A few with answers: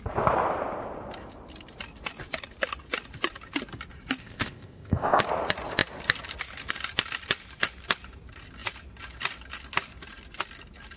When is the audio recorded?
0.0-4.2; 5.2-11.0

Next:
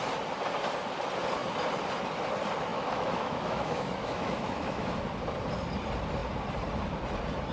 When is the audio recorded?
0.0-2.7; 4.9-7.5

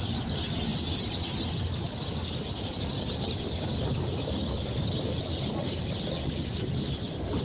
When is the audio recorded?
0.0-7.4